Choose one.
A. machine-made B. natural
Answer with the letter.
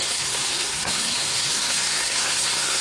A